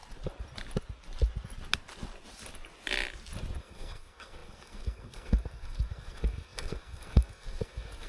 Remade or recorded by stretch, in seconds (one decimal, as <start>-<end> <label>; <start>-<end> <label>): 0.0-3.6 recorded; 3.6-8.1 remade